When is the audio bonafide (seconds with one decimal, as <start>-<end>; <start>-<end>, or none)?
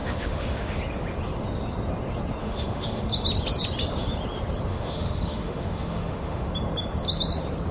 0.8-2.4; 3.0-4.7; 6.5-7.7